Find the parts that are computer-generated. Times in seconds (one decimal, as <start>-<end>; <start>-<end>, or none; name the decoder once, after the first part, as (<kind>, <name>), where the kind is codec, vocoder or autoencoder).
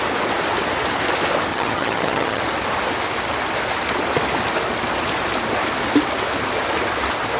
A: 1.5-2.4 (vocoder, HiFi-GAN)